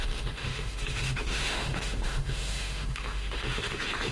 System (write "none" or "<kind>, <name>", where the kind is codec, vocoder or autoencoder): autoencoder, DAC-VAE